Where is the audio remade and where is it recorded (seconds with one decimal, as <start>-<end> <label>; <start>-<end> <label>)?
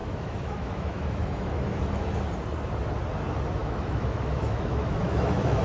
0.0-2.2 remade; 2.2-3.6 recorded; 3.6-5.6 remade